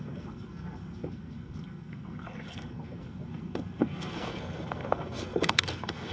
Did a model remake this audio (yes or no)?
yes